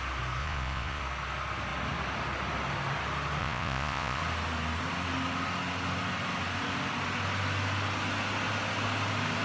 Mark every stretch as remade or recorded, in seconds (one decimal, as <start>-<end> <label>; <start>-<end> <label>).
0.0-0.4 recorded; 0.4-1.0 remade; 1.0-3.4 recorded; 3.4-4.2 remade; 4.2-9.4 recorded